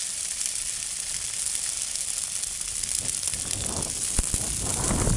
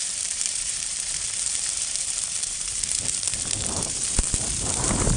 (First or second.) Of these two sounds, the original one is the first